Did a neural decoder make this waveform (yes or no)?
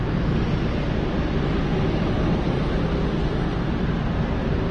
no